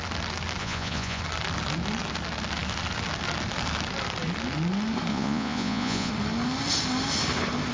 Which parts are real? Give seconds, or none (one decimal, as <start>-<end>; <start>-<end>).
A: 0.0-0.6; 1.2-5.1; 6.1-7.7